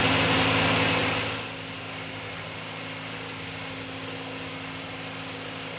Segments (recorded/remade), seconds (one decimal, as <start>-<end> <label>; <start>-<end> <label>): 0.0-5.8 recorded